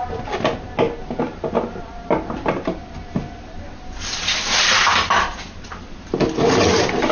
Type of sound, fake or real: real